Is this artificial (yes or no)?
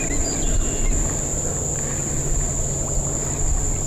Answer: no